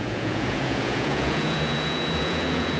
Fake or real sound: fake